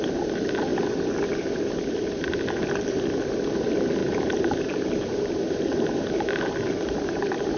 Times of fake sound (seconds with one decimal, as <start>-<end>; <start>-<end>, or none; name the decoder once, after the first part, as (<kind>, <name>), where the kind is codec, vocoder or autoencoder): 4.0-6.3 (vocoder, BigVGAN v2)